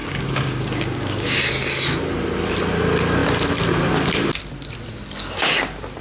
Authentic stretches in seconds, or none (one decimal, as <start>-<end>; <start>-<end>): 1.5-6.0